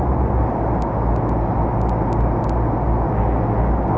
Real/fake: real